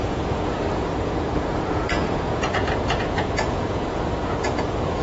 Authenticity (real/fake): fake